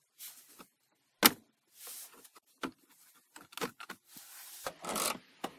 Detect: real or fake real